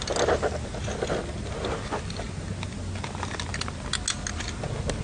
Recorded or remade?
recorded